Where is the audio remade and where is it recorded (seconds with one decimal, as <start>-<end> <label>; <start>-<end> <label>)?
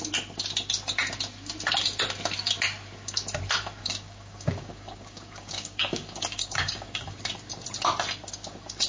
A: 0.0-3.8 recorded; 3.8-7.2 remade; 7.2-8.9 recorded